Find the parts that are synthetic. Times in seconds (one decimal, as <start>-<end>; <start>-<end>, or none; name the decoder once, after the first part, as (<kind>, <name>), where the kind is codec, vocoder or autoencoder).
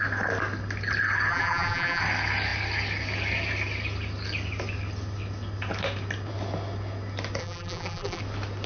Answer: 1.3-2.0 (vocoder, BigVGAN v2); 7.4-8.2